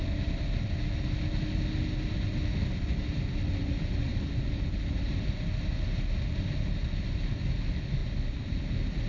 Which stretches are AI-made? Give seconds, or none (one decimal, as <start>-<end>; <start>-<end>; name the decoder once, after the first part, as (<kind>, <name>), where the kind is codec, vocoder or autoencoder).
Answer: none